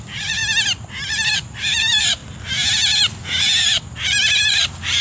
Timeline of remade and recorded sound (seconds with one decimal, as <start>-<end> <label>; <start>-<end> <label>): 0.0-0.4 remade; 0.4-1.3 recorded; 1.3-2.2 remade; 2.2-3.6 recorded; 3.6-5.0 remade